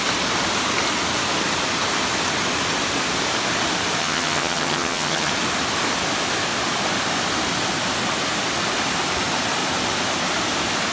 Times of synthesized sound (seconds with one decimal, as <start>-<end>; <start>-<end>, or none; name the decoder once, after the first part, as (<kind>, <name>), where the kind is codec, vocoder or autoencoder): 4.0-5.3 (vocoder, HiFi-GAN)